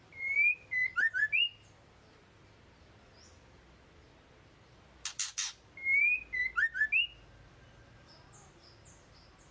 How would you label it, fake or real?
real